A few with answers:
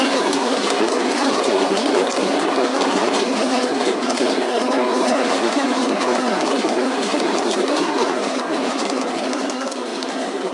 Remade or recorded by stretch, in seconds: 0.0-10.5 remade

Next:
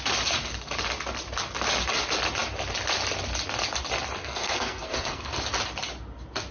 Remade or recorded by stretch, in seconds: 0.0-4.2 recorded; 4.2-5.3 remade; 5.3-6.5 recorded

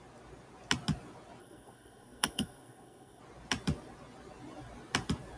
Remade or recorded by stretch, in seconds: 0.0-1.4 recorded; 1.4-3.2 remade; 3.2-5.4 recorded

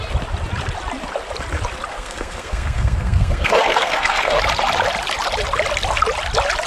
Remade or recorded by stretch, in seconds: 0.0-1.9 recorded; 1.9-4.4 remade; 4.4-6.7 recorded

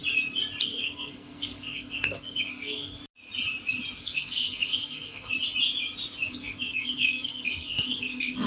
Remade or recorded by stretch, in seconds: 0.0-0.6 recorded; 0.6-3.0 remade; 3.0-4.0 recorded; 4.0-5.3 remade; 5.3-6.3 recorded; 6.3-8.5 remade

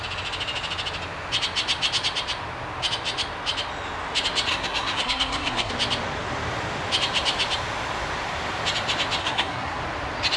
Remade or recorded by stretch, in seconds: 0.0-4.5 recorded; 4.5-5.7 remade; 5.7-9.2 recorded; 9.2-9.8 remade; 9.8-10.4 recorded

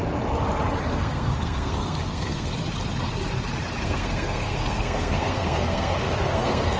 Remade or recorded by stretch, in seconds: 0.0-0.9 recorded; 0.9-2.5 remade; 2.5-3.8 recorded; 3.8-6.8 remade